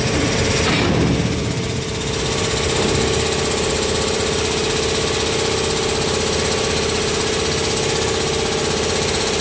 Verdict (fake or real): real